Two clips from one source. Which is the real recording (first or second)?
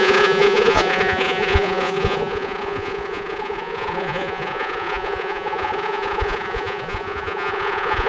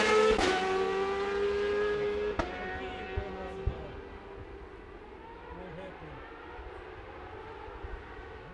second